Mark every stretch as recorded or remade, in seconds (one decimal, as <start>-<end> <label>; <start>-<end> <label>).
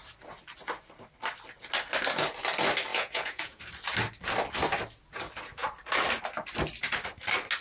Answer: 0.0-2.9 recorded; 2.9-3.6 remade; 3.6-7.6 recorded